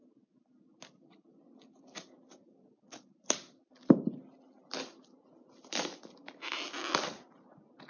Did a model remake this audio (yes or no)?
no